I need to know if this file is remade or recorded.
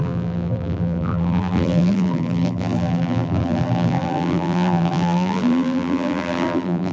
remade